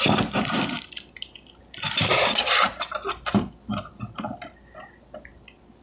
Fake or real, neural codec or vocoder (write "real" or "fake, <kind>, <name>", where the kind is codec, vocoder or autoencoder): real